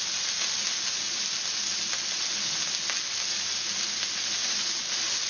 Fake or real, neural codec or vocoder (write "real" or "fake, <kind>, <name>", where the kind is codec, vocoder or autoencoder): real